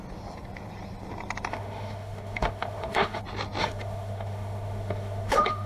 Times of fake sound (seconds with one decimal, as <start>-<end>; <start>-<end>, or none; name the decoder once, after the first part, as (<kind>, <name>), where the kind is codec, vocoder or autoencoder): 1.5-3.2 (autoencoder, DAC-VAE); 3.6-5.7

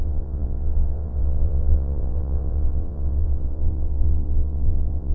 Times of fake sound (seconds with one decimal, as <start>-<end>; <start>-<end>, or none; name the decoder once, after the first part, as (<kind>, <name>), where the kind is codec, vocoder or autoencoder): 0.0-5.1 (vocoder, WaveNeXt)

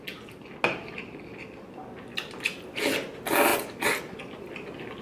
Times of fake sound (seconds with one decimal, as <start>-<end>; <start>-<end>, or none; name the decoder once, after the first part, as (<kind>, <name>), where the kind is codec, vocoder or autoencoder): none